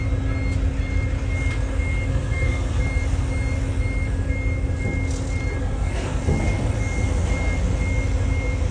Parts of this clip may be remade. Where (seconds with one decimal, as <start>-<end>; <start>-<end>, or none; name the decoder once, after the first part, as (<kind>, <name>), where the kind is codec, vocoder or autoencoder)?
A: 2.1-2.8 (codec, SNAC); 5.6-6.2